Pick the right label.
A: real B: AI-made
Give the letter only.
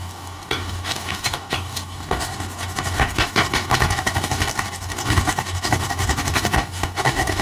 B